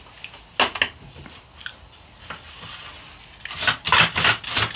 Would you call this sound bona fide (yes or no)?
yes